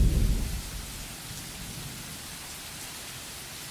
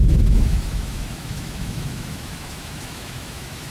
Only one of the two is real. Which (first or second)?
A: first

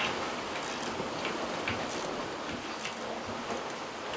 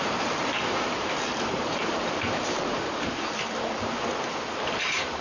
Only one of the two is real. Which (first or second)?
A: first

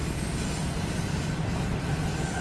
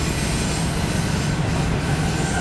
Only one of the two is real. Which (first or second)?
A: second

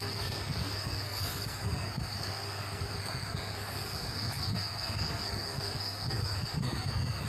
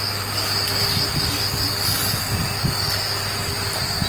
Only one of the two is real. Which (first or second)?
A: second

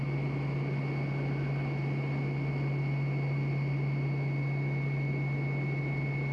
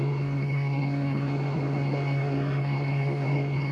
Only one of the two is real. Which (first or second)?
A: first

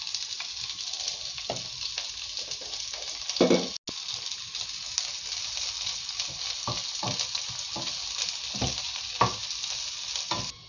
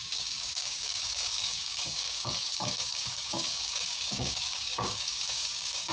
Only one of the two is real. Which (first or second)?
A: first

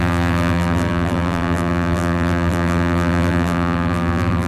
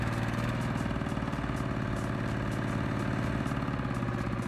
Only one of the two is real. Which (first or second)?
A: second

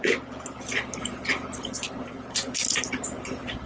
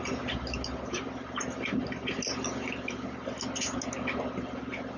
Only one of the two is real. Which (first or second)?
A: second